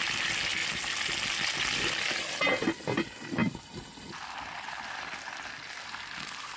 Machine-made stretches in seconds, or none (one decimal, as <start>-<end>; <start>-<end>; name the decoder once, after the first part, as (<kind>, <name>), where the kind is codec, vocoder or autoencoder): 0.0-0.6 (vocoder, BigVGAN v2); 2.3-3.4; 5.8-6.6